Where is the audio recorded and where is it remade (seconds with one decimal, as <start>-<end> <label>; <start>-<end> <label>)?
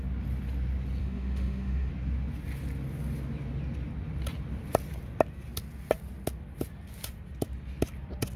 0.0-1.0 recorded; 1.0-1.9 remade; 1.9-8.4 recorded